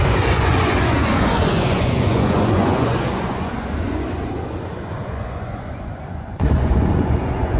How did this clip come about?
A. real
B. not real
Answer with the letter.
B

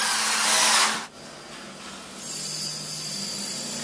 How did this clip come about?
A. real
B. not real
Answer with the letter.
A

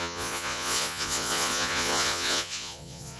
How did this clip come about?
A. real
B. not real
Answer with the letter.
B